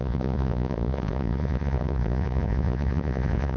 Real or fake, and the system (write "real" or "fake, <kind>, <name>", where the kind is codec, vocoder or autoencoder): fake, vocoder, Vocos